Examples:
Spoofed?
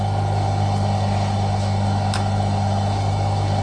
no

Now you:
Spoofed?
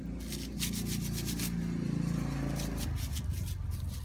no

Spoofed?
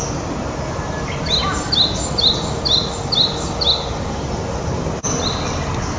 no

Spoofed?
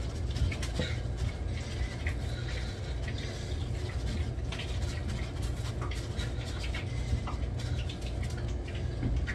no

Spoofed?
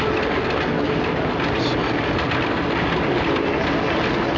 no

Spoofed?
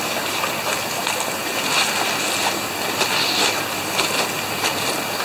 no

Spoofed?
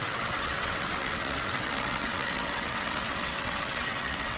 yes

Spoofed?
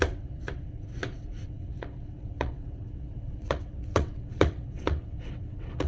yes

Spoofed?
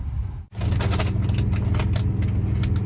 no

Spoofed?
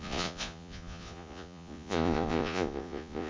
yes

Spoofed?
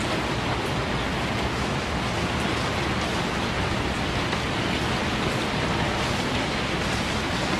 no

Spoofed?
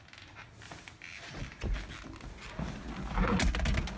no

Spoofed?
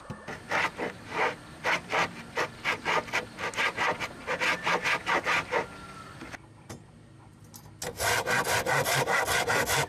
no